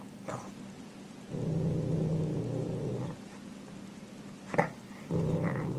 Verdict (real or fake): fake